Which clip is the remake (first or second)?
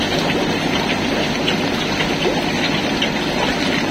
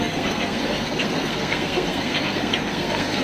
second